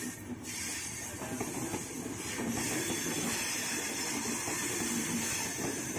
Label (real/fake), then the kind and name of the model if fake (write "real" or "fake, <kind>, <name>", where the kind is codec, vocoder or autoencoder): real